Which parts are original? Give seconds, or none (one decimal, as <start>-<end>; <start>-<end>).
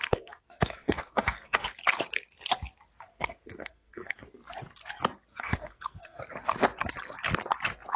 1.7-3.1; 4.2-5.3; 6.2-8.0